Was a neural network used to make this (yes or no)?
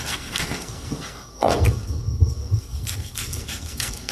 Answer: yes